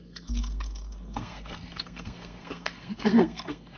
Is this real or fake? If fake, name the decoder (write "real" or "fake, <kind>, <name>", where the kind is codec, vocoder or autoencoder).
fake, codec, SNAC